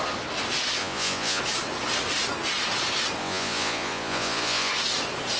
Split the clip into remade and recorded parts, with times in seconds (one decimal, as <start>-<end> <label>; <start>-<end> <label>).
0.0-0.8 recorded; 0.8-1.4 remade; 1.4-3.2 recorded; 3.2-4.7 remade; 4.7-5.4 recorded

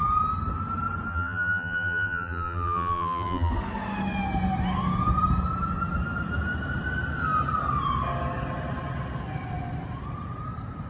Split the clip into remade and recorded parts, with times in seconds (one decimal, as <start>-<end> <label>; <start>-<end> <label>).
0.0-1.1 recorded; 1.1-3.5 remade; 3.5-10.9 recorded

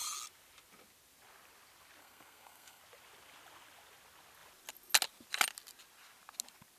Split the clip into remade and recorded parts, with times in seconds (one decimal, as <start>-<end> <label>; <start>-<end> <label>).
0.0-2.0 recorded; 2.0-2.8 remade; 2.8-6.8 recorded

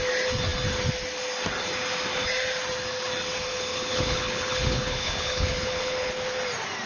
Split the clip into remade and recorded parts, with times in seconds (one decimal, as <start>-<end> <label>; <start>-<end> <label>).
0.0-3.5 recorded; 3.5-6.1 remade; 6.1-6.9 recorded

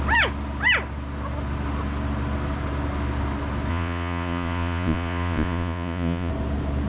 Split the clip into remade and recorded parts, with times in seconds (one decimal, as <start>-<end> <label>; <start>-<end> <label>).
0.0-3.7 recorded; 3.7-6.3 remade; 6.3-6.9 recorded

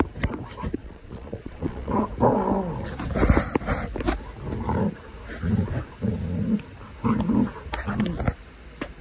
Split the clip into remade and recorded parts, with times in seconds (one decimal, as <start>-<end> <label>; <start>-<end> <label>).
0.0-0.8 recorded; 0.8-1.9 remade; 1.9-9.0 recorded

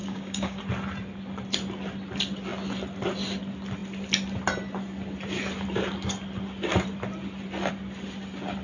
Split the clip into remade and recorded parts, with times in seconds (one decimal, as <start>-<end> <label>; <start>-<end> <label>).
0.0-0.6 remade; 0.6-8.6 recorded